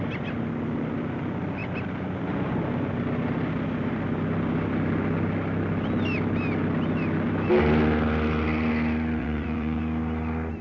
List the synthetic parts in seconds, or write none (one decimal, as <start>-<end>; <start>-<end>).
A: 9.2-9.8